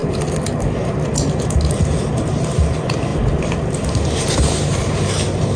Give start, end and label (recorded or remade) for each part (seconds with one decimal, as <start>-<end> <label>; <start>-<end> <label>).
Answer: 0.0-5.6 recorded